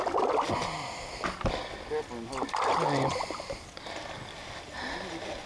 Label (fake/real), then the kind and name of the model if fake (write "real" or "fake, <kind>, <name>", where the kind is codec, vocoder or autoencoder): real